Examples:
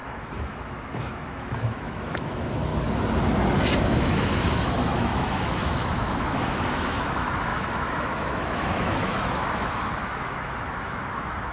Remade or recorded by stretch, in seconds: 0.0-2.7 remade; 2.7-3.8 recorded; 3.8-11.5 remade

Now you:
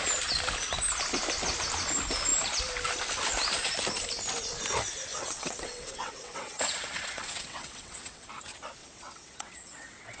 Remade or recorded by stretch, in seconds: 0.0-5.1 recorded; 5.1-8.3 remade; 8.3-8.8 recorded; 8.8-10.2 remade

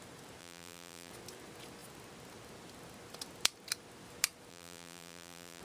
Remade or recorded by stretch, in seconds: 0.0-0.4 recorded; 0.4-1.1 remade; 1.1-4.5 recorded; 4.5-5.6 remade

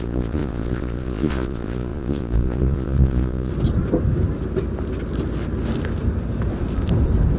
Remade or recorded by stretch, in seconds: 0.0-3.5 remade; 3.5-7.4 recorded

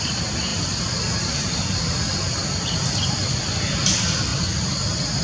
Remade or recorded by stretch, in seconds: 0.0-5.2 recorded